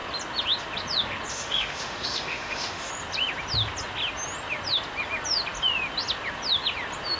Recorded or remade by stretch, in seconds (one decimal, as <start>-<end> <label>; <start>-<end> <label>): 0.0-1.3 recorded; 1.3-2.9 remade; 2.9-7.2 recorded